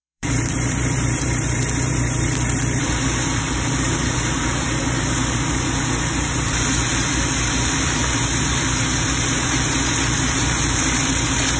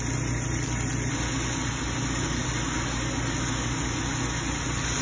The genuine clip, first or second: second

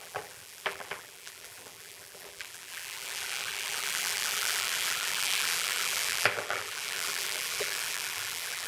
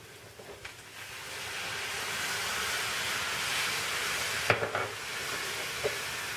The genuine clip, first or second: second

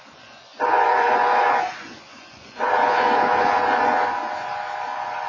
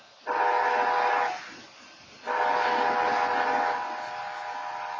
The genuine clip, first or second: second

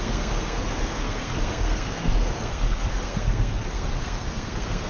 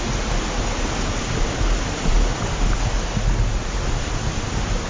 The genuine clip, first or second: second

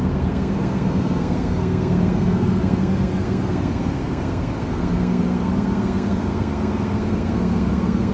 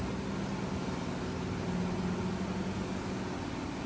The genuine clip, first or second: second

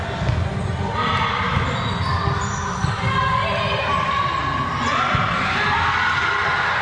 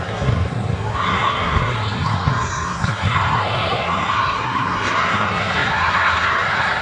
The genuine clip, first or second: first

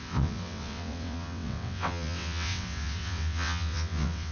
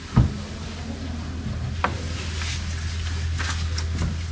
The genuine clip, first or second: second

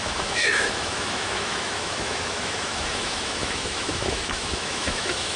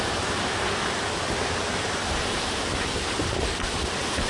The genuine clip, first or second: second